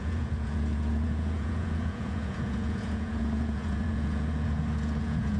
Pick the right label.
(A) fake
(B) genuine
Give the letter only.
A